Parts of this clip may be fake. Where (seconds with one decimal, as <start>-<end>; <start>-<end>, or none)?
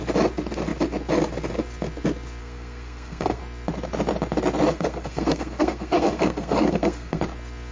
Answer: 2.4-3.4; 4.7-7.2